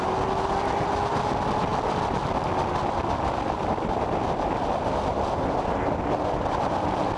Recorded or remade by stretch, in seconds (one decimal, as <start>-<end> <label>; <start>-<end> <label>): 0.0-7.2 recorded